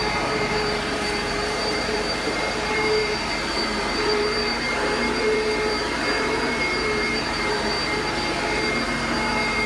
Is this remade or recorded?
remade